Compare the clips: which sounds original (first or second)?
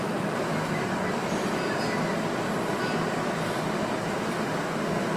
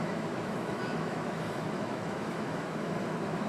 first